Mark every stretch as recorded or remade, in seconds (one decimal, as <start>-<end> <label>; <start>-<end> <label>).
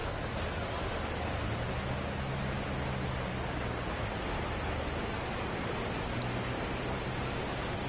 0.0-7.9 recorded